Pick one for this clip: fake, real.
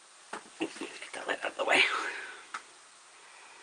real